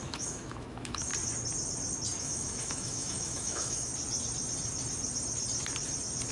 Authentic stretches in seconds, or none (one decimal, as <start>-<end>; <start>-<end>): 1.1-2.2; 3.9-6.3